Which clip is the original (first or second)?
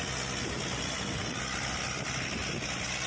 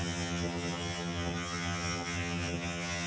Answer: first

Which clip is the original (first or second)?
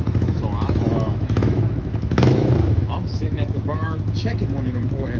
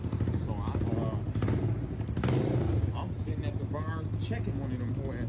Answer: second